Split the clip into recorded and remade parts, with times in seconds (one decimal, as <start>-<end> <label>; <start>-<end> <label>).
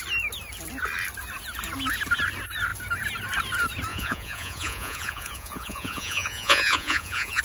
0.0-3.9 recorded; 3.9-7.4 remade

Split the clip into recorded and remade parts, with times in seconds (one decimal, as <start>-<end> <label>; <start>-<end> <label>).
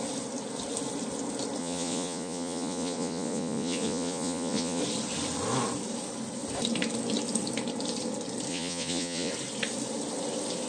0.0-1.6 recorded; 1.6-4.8 remade; 4.8-8.5 recorded; 8.5-9.3 remade; 9.3-10.7 recorded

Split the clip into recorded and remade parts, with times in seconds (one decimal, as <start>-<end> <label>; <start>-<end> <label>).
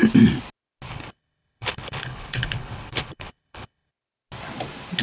0.0-0.9 recorded; 0.9-3.9 remade; 3.9-5.0 recorded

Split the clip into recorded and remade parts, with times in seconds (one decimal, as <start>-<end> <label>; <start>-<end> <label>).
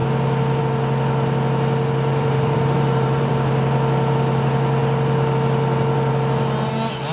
0.0-2.1 recorded; 2.1-3.3 remade; 3.3-7.1 recorded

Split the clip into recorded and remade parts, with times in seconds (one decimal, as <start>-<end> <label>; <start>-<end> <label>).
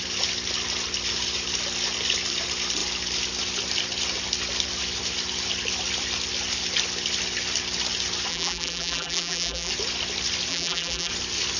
0.0-8.3 recorded; 8.3-9.7 remade; 9.7-10.5 recorded; 10.5-11.1 remade; 11.1-11.6 recorded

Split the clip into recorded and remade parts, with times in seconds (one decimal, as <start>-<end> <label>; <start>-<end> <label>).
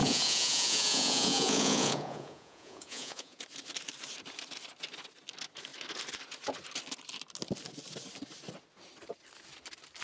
0.0-3.4 remade; 3.4-10.0 recorded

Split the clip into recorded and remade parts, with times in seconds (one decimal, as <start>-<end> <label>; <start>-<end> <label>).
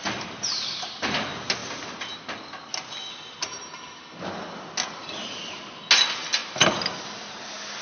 0.0-7.8 recorded